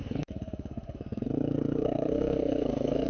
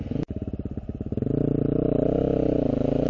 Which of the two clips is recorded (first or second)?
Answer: second